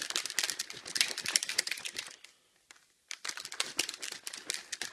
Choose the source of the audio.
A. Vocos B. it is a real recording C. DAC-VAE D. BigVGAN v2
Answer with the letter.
B